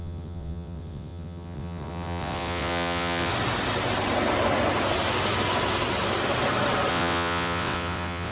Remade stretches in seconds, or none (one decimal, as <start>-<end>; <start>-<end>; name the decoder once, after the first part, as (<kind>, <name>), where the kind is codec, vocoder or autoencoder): 0.0-3.3 (vocoder, WaveNeXt); 6.9-8.3